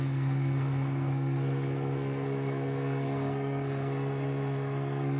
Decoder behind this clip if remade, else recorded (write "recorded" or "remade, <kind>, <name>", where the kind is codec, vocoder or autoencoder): remade, codec, SNAC